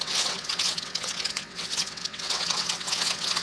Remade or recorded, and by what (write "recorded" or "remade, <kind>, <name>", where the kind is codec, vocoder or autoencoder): remade, vocoder, WaveNeXt